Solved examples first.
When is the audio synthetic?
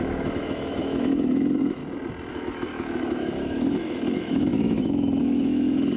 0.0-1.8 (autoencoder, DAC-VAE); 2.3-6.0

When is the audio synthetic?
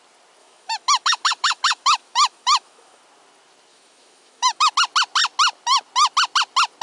0.4-3.0 (autoencoder, DAC-VAE); 3.7-4.7